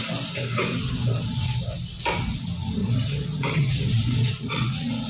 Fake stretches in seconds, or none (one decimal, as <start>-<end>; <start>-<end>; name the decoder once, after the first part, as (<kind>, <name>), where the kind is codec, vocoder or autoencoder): 2.8-5.1 (vocoder, WaveNeXt)